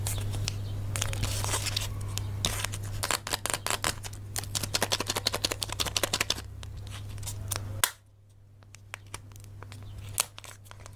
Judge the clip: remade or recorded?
recorded